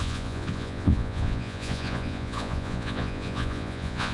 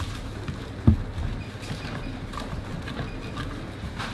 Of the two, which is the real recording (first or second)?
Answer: second